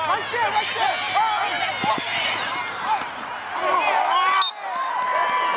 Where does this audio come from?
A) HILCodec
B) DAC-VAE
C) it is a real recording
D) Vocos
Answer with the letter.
C